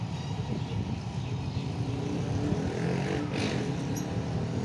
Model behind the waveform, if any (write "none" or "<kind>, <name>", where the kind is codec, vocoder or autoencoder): none